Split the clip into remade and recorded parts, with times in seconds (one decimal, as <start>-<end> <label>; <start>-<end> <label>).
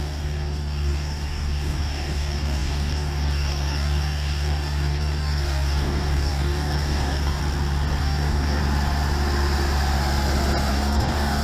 0.0-7.4 remade; 7.4-8.0 recorded; 8.0-8.6 remade; 8.6-10.7 recorded; 10.7-11.4 remade